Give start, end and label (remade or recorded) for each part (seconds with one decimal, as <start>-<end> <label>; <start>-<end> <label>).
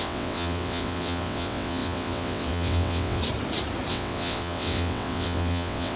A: 0.0-3.2 remade; 3.2-3.9 recorded; 3.9-6.0 remade